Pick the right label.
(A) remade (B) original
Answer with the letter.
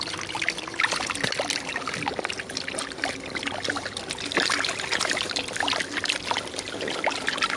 B